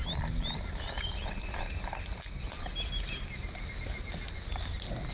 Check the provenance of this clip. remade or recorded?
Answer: recorded